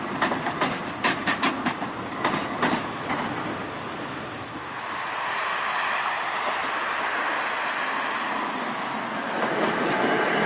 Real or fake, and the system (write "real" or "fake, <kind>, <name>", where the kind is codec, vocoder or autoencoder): real